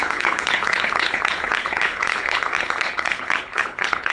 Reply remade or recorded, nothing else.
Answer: remade